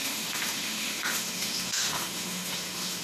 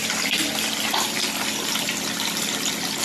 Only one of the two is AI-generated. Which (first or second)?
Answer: first